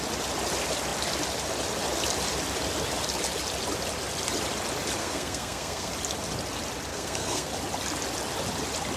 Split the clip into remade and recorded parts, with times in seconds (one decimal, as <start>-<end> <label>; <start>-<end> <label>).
0.0-5.0 recorded; 5.0-5.9 remade; 5.9-6.9 recorded; 6.9-7.5 remade; 7.5-9.0 recorded